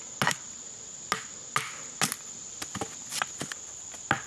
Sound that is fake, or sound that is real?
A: real